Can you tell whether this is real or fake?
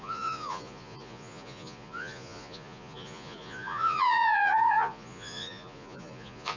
fake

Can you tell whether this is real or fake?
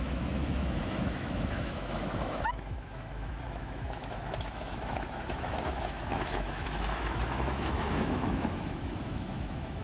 fake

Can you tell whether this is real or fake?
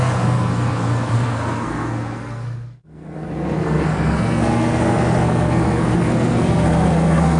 fake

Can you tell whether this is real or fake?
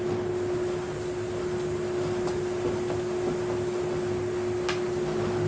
real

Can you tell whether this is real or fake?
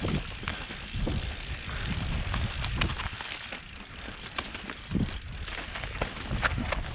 real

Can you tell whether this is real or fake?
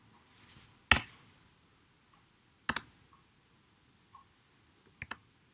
real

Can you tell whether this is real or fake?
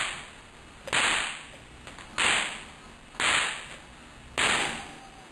real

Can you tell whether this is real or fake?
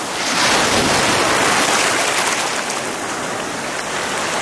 real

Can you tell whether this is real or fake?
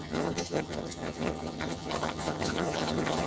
fake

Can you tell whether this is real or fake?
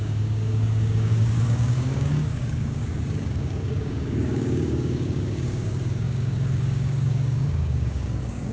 fake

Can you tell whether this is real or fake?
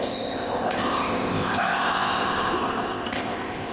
fake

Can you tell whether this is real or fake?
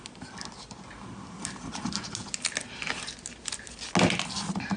real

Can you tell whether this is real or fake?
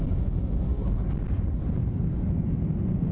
real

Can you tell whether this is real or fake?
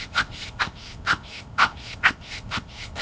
fake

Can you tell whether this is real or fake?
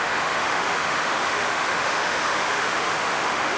fake